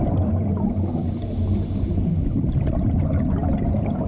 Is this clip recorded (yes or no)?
yes